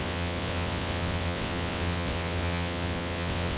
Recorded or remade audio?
remade